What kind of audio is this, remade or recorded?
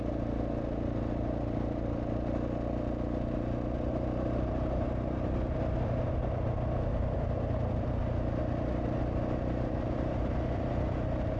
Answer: recorded